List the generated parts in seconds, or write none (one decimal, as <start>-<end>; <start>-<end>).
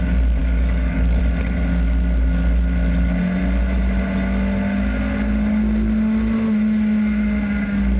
0.4-1.2